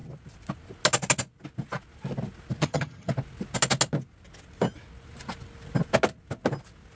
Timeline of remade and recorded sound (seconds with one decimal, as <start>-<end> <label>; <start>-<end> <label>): 0.0-2.6 recorded; 2.6-3.1 remade; 3.1-7.0 recorded